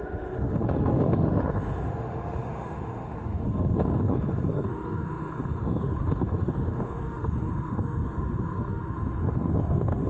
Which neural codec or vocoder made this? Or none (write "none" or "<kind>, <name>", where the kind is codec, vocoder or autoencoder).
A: autoencoder, DAC-VAE